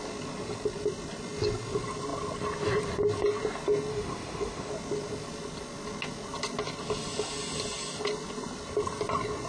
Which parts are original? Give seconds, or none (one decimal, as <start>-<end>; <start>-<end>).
0.0-3.9; 4.7-9.5